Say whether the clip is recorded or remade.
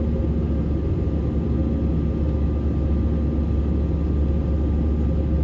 recorded